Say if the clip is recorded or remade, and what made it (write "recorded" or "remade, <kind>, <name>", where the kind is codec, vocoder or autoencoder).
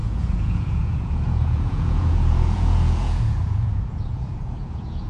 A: remade, vocoder, Vocos